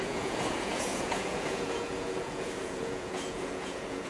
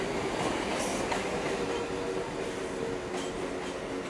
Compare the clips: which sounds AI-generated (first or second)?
first